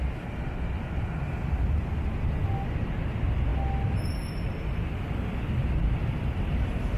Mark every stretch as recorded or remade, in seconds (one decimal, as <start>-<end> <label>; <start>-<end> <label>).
0.0-7.0 recorded